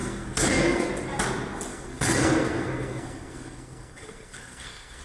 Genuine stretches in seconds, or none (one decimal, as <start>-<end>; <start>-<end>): 0.9-1.7